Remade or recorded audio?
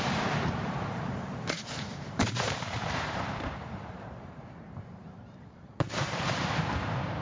remade